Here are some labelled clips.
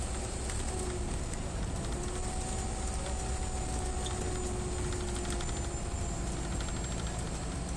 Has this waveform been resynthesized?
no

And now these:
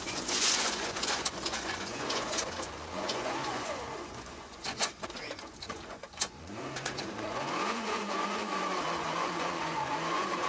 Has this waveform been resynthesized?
yes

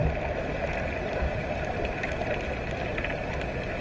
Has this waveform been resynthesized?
no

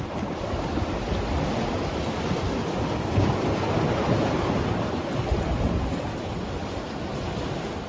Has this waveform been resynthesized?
no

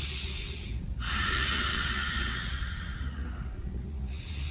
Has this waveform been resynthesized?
yes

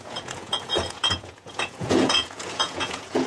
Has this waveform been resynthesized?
yes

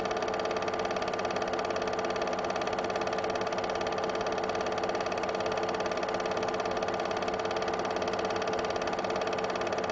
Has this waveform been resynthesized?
no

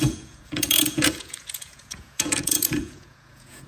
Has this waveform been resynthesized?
yes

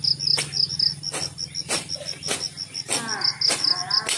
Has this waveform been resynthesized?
no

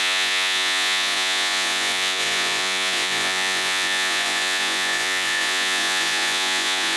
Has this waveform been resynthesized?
yes